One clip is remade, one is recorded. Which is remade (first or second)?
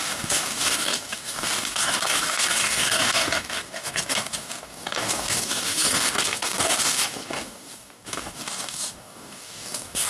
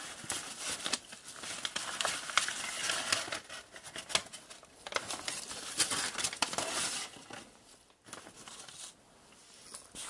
first